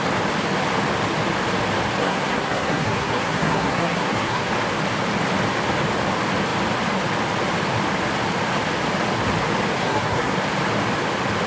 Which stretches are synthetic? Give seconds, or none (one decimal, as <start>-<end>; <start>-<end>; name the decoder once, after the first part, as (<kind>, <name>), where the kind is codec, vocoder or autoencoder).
2.0-4.5 (codec, SNAC); 9.8-10.3